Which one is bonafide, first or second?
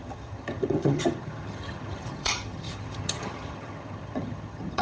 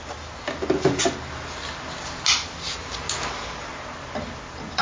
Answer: second